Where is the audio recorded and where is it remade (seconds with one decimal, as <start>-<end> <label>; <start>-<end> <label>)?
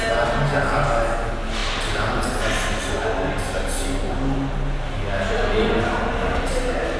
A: 0.0-7.0 recorded